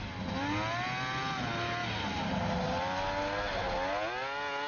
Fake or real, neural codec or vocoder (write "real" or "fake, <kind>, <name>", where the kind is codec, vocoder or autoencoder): real